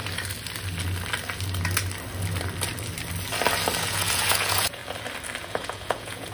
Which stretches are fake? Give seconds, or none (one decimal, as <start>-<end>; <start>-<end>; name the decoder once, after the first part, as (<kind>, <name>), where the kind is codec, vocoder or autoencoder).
3.8-4.8 (vocoder, Vocos); 5.4-6.3